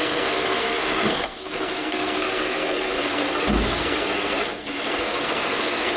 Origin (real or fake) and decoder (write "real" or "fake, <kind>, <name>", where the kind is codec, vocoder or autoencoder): fake, codec, SNAC